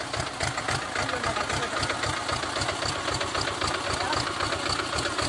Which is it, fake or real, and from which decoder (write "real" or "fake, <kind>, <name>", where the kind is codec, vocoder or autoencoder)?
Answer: real